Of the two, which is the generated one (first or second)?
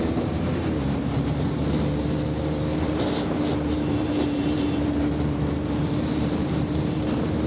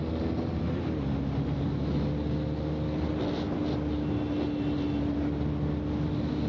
first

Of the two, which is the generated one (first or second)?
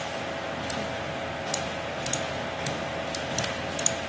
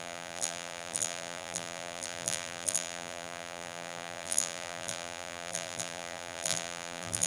second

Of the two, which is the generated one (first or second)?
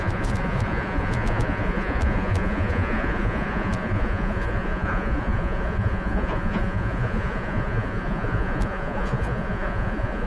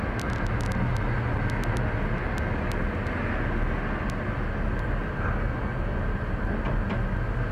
first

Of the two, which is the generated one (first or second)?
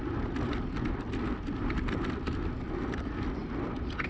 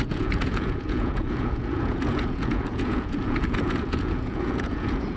second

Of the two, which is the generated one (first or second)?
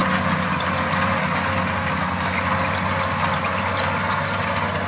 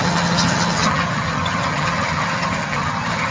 second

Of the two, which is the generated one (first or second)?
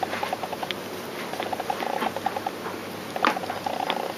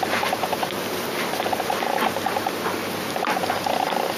second